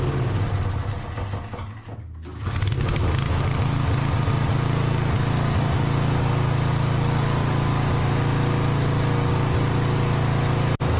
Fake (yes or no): no